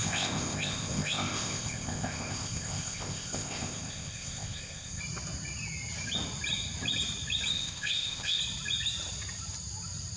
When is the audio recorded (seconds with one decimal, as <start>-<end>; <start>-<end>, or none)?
5.0-7.5; 8.4-10.2